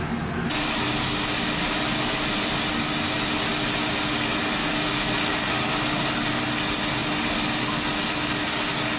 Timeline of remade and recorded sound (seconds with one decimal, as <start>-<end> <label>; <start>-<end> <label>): 0.0-9.0 recorded